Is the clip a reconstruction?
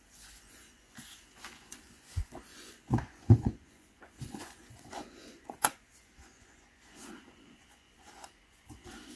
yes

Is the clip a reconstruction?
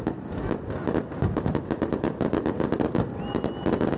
no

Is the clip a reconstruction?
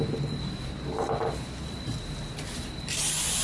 no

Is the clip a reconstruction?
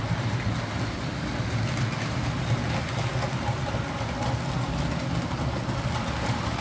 no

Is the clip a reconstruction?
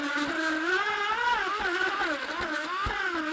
no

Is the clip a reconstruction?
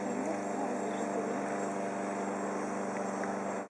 no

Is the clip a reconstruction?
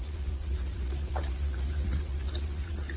yes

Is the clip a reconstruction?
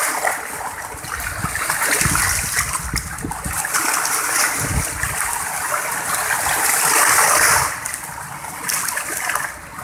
no